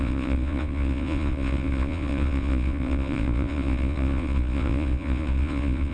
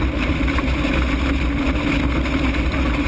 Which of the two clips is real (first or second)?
second